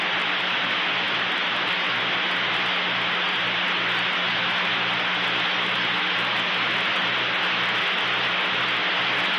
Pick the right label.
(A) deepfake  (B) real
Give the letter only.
B